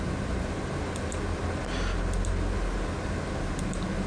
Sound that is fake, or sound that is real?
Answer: real